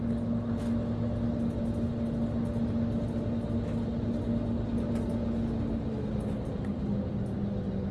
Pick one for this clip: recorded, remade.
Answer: recorded